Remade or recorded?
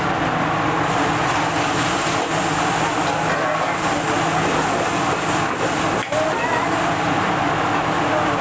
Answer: recorded